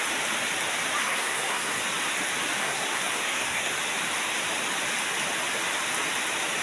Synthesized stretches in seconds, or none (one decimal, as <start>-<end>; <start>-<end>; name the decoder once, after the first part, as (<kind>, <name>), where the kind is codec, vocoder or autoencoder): 1.0-1.8 (codec, SNAC); 2.6-3.7